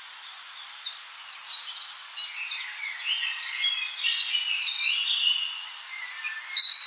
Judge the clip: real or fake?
real